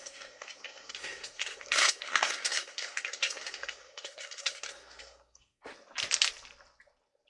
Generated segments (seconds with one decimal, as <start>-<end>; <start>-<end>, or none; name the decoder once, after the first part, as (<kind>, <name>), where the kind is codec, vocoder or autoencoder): 0.0-5.7 (codec, SNAC)